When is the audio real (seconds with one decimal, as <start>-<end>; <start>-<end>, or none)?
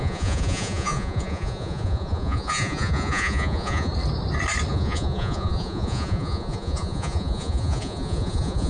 3.9-4.7